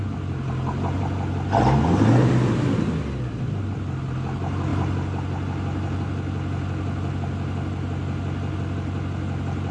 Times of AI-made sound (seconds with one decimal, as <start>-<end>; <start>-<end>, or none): none